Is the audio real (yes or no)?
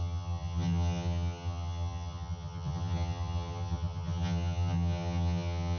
no